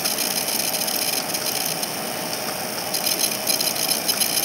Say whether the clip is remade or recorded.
recorded